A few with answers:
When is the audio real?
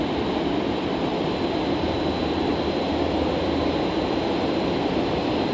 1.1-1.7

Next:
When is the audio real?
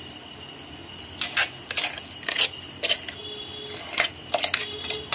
0.0-5.1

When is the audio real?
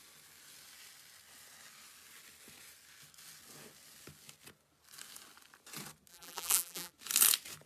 0.0-6.1; 6.9-7.7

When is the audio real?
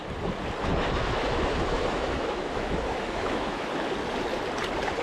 0.0-0.7; 3.7-5.0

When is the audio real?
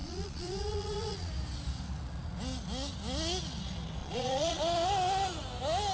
1.3-4.0; 4.6-5.9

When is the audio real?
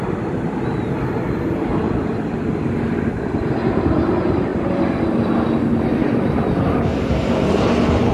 0.0-1.7; 3.4-6.0